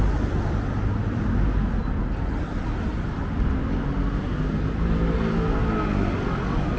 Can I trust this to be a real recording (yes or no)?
yes